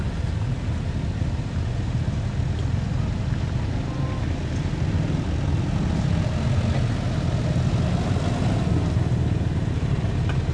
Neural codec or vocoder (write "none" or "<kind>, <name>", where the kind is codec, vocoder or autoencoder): none